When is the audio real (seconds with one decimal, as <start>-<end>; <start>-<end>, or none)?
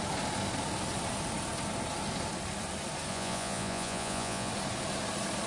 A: 0.0-3.1; 4.5-5.5